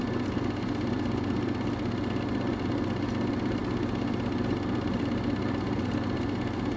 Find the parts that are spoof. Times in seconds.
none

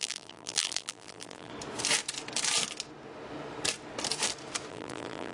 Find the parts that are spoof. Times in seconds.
0.0-1.5; 4.7-5.3

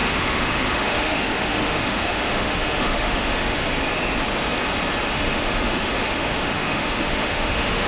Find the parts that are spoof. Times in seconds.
0.0-3.6; 5.1-7.9

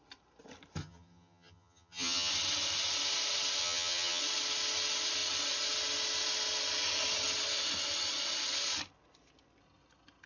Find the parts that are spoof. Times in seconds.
0.8-2.3; 3.6-4.2

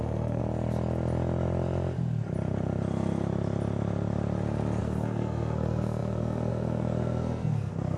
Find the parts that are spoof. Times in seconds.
0.0-0.4; 4.8-8.0